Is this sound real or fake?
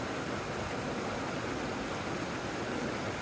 real